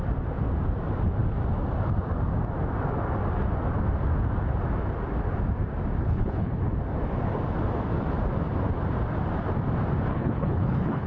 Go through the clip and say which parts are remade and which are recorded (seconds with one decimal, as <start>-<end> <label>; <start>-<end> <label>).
0.0-6.0 recorded; 6.0-6.6 remade; 6.6-10.1 recorded; 10.1-11.1 remade